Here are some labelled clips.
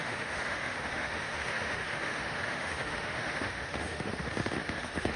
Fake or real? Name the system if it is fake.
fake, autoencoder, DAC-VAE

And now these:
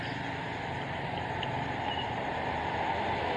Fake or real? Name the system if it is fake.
real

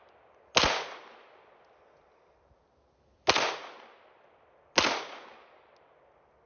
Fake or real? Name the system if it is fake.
real